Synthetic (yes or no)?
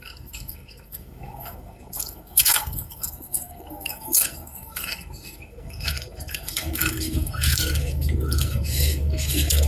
yes